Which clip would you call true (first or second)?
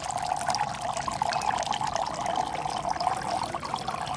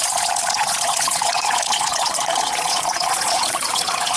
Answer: first